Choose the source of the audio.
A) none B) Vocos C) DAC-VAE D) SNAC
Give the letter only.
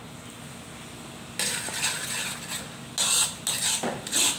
A